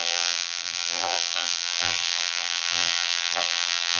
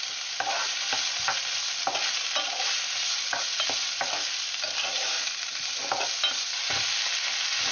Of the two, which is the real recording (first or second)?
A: second